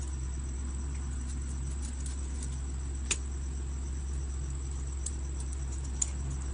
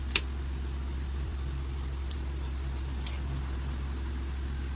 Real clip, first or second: first